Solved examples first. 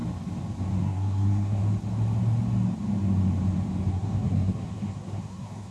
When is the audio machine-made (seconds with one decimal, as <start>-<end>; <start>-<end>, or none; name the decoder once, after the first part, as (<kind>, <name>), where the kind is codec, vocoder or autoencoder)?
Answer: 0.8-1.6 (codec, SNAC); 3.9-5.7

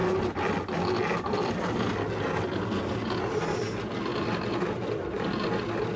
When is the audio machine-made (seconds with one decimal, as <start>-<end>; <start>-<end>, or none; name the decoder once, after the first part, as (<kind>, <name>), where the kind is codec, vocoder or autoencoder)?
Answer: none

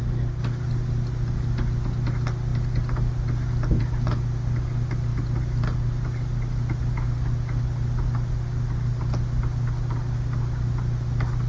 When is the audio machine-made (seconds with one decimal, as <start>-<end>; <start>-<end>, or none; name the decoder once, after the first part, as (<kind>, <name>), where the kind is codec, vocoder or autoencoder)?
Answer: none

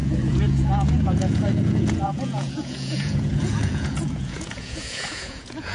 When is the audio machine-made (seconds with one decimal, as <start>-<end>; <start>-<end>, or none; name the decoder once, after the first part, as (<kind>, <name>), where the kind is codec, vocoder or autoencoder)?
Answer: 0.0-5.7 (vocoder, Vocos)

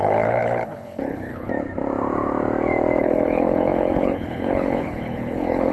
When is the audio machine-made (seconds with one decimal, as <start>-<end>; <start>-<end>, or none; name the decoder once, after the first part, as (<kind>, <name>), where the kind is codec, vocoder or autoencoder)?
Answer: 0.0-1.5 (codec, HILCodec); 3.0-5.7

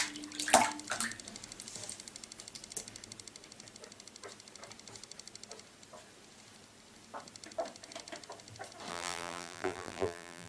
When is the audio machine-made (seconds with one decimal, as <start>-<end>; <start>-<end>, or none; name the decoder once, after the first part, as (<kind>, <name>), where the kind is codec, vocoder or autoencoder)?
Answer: 8.9-10.5 (vocoder, BigVGAN v2)

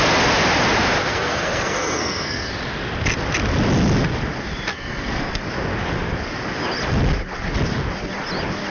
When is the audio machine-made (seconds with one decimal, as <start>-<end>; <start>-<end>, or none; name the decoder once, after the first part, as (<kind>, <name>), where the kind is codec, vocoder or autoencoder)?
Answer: 1.0-2.5 (codec, SNAC); 4.7-5.3